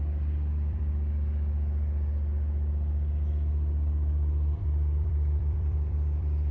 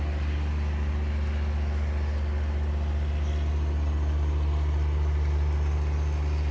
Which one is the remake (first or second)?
first